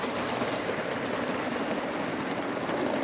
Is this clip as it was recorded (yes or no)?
yes